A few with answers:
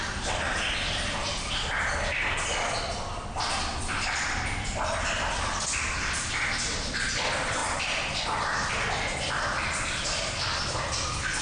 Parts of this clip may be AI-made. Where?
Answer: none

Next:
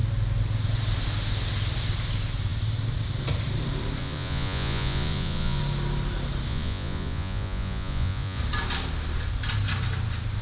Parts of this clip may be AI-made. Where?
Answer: 4.0-5.6; 6.5-8.4

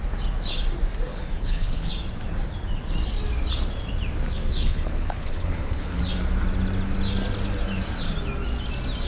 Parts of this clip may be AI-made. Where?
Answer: 1.1-1.9; 4.5-6.0